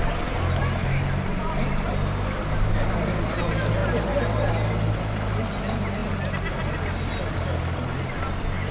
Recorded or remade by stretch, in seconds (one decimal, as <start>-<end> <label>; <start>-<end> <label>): 0.0-8.7 recorded